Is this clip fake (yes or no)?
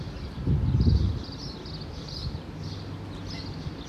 no